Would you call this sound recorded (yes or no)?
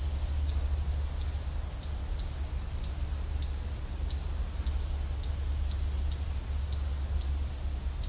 yes